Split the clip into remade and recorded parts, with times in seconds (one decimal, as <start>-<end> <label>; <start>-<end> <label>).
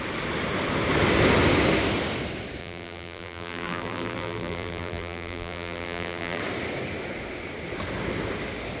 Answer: 0.0-2.6 recorded; 2.6-6.4 remade; 6.4-8.8 recorded